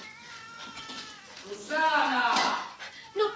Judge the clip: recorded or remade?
remade